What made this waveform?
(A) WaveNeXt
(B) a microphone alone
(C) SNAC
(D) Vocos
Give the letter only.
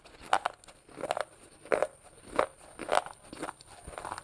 B